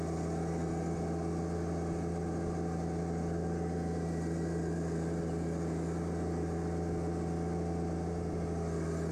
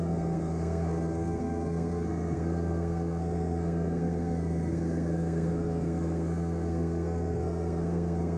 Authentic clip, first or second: first